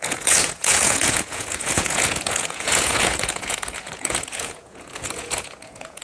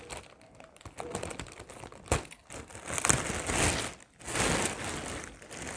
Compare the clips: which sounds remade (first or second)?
first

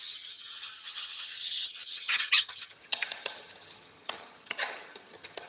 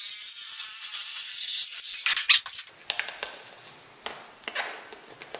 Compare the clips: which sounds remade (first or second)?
first